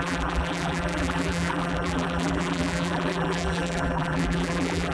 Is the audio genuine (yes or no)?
no